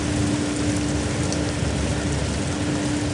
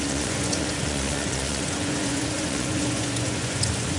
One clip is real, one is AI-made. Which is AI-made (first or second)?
second